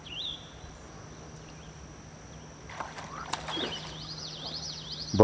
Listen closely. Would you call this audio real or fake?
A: real